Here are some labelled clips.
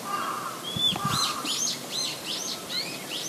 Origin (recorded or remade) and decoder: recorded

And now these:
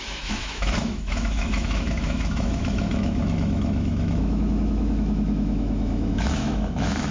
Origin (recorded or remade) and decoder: remade, autoencoder, DAC-VAE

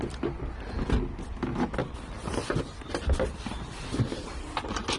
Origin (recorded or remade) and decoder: recorded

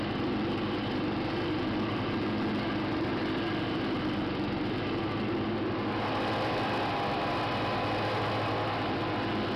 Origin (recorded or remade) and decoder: recorded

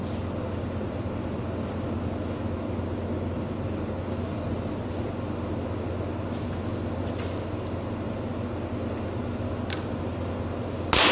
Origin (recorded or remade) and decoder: recorded